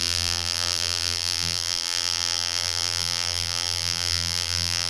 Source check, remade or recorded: remade